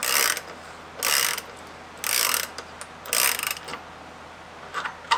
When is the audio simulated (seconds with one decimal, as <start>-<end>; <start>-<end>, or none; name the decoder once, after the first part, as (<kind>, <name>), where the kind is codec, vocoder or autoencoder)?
none